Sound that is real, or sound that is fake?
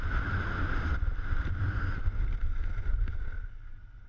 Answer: real